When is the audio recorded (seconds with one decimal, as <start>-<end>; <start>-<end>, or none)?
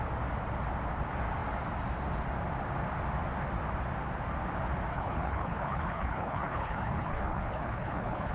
0.0-4.9